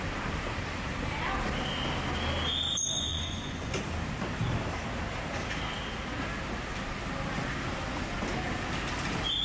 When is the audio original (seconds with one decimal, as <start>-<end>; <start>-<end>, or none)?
0.0-3.1; 3.8-9.4

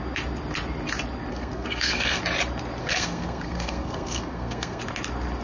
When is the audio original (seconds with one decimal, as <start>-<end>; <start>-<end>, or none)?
0.0-1.3; 2.2-2.8; 4.8-5.4

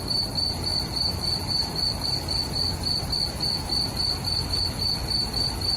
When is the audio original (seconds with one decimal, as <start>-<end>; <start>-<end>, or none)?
0.0-0.7; 2.4-5.0

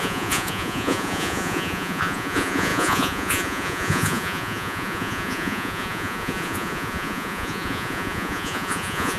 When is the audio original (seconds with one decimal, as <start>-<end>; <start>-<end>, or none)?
none